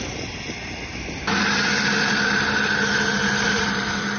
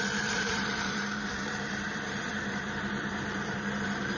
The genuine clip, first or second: first